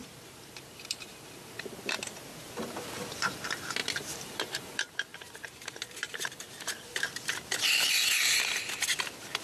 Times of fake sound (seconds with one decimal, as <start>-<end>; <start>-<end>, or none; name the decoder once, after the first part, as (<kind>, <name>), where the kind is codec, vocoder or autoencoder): 0.0-1.7 (vocoder, BigVGAN v2); 3.8-7.4